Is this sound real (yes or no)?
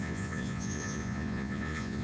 no